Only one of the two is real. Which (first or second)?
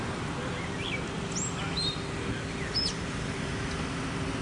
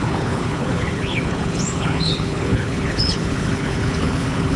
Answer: first